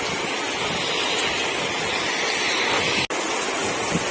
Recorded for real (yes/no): yes